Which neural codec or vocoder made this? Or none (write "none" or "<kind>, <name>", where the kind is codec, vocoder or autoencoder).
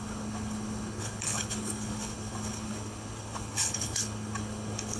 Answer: codec, HILCodec